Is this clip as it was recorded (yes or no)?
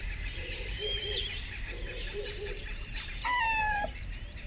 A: no